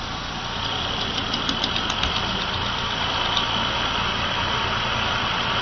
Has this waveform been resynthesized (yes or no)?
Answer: yes